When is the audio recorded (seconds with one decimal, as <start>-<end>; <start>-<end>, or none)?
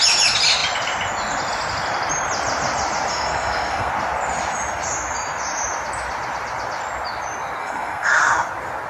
0.0-3.1; 3.9-7.6; 8.1-8.9